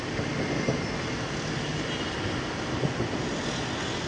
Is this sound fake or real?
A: real